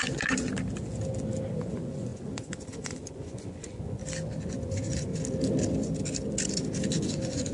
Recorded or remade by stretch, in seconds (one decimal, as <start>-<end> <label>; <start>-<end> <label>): 0.0-0.5 remade; 0.5-1.6 recorded; 1.6-4.0 remade; 4.0-4.5 recorded; 4.5-5.1 remade; 5.1-7.0 recorded; 7.0-7.5 remade

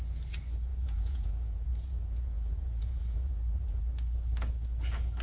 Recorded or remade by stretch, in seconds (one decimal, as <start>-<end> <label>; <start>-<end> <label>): 0.0-0.7 recorded; 0.7-3.8 remade; 3.8-5.2 recorded